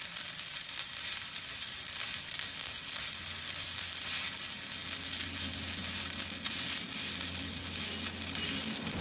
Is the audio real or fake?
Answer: real